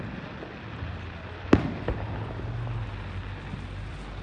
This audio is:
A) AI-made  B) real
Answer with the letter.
B